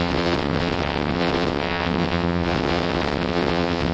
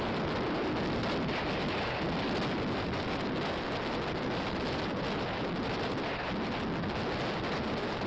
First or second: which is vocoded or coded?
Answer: first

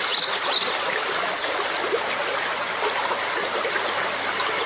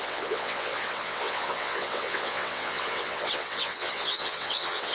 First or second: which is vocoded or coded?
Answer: second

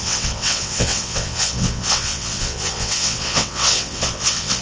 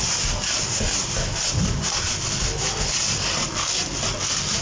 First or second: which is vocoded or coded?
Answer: first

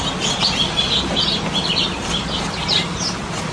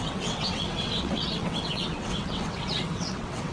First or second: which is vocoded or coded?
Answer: second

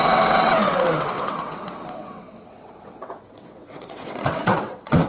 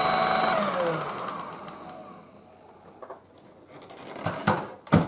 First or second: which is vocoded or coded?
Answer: first